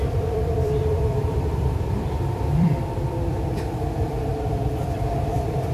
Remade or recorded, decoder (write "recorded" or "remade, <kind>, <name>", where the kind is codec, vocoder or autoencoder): remade, vocoder, BigVGAN v2